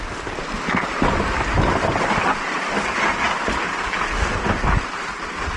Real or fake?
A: real